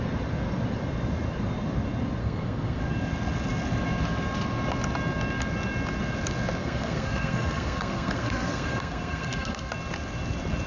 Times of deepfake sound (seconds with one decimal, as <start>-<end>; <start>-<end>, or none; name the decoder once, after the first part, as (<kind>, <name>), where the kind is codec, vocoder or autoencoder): 2.2-2.8 (codec, SNAC); 6.6-9.7